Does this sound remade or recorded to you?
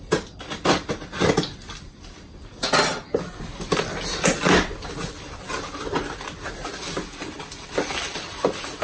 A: recorded